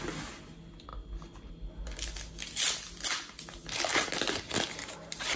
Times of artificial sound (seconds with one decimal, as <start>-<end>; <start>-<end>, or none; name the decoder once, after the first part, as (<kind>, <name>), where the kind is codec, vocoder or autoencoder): none